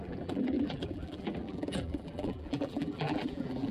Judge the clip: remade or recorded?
remade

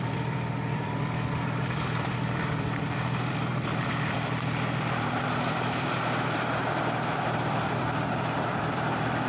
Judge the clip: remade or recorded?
remade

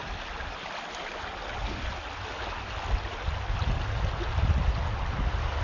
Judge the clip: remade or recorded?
recorded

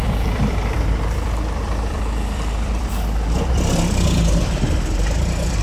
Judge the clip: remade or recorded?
remade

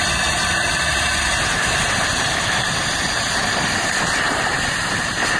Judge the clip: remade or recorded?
remade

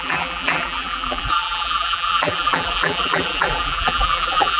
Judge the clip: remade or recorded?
remade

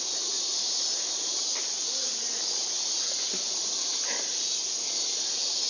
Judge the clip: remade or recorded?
recorded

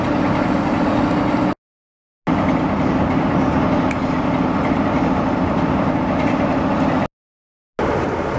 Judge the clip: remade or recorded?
recorded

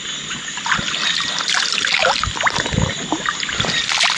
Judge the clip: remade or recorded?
recorded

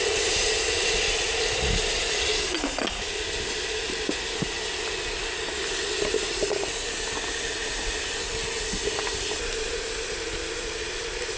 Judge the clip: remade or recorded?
recorded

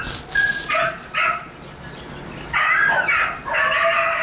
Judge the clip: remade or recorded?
recorded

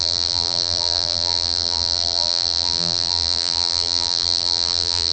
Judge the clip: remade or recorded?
remade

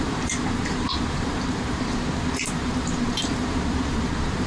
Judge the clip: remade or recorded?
remade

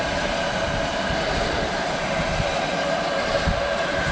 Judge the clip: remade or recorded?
remade